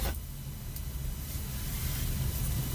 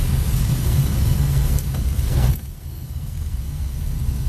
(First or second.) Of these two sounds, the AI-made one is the second